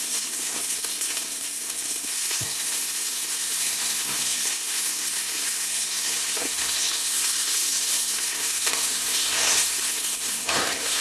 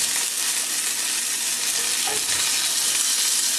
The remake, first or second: first